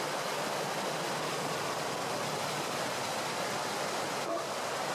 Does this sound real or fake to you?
real